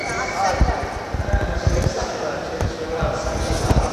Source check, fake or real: real